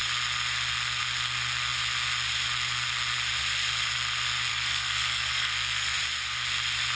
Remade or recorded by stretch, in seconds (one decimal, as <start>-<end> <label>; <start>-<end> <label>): 0.0-4.5 recorded; 4.5-6.0 remade; 6.0-7.0 recorded